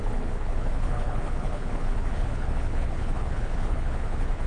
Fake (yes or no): yes